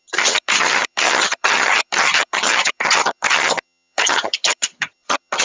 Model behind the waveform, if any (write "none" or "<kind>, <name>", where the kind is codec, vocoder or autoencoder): vocoder, HiFi-GAN